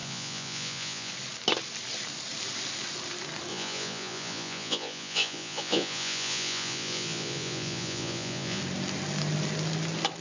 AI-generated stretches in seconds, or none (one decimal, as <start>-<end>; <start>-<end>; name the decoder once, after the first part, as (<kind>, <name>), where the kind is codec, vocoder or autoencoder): 0.0-1.1 (vocoder, Vocos); 3.5-8.6